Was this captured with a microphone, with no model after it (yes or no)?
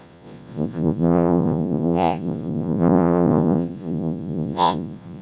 no